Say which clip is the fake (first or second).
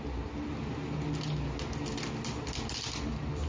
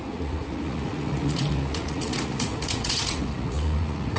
second